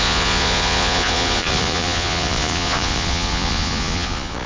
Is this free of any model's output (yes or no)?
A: no